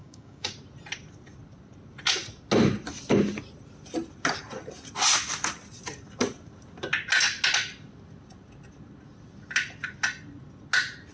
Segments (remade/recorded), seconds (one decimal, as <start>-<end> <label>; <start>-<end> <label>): 0.0-0.5 remade; 0.5-11.1 recorded